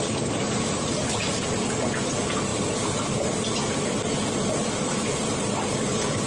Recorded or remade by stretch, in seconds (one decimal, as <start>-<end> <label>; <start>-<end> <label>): 0.0-6.3 recorded